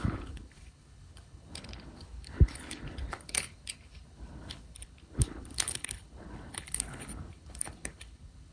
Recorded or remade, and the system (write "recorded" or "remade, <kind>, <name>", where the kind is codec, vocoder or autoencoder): remade, codec, HILCodec